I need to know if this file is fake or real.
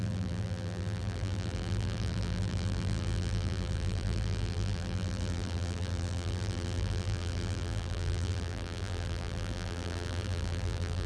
fake